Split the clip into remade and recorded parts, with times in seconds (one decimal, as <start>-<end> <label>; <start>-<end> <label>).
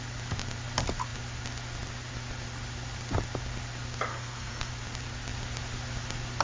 0.0-4.1 recorded; 4.1-4.7 remade; 4.7-6.4 recorded